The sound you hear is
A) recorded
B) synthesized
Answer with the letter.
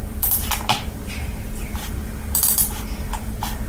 B